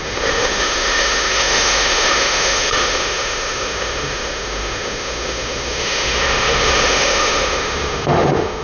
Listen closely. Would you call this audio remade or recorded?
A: remade